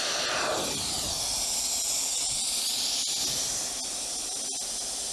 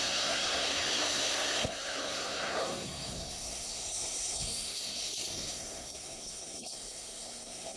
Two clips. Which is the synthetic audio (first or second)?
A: second